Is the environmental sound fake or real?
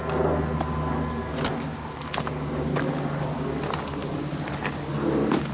real